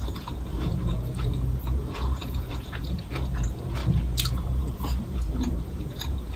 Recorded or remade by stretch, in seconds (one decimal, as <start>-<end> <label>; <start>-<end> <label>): 0.0-3.8 remade; 3.8-4.3 recorded; 4.3-6.4 remade